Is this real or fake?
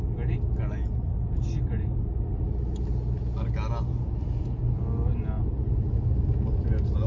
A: real